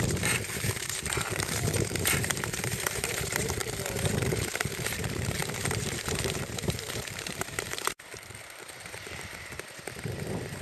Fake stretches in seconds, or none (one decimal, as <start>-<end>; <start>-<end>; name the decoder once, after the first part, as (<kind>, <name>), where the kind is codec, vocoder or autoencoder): 0.0-3.6 (vocoder, BigVGAN v2); 4.1-10.6

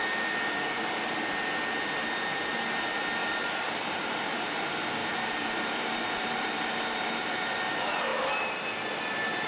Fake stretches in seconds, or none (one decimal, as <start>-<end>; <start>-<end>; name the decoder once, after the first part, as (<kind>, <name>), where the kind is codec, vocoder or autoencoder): 3.2-4.3 (vocoder, BigVGAN v2); 5.0-7.7